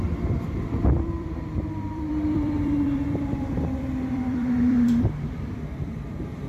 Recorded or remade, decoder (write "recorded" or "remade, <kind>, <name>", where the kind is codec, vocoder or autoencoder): remade, vocoder, BigVGAN v2